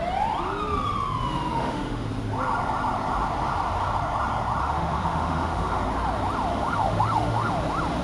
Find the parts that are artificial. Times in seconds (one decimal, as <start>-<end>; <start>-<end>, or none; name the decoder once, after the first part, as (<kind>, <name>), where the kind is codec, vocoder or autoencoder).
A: 1.5-2.1 (autoencoder, DAC-VAE); 4.6-5.8; 6.5-7.5